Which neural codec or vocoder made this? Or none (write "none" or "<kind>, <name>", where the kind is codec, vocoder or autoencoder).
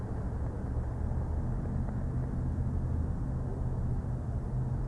none